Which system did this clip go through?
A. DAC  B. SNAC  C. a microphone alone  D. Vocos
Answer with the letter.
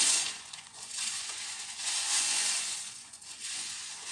D